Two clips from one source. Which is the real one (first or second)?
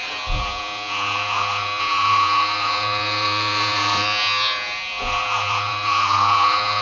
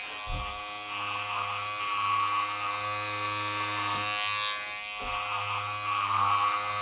second